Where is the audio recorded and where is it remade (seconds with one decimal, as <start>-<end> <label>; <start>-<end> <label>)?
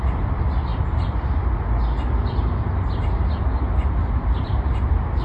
0.0-4.0 recorded; 4.0-5.2 remade